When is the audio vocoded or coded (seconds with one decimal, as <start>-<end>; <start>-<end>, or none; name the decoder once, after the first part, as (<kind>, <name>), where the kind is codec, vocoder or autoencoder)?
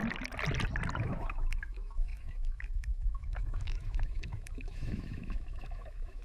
1.0-6.2 (autoencoder, DAC-VAE)